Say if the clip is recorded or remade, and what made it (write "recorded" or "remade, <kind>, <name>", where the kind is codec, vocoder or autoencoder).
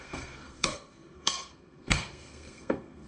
remade, codec, SNAC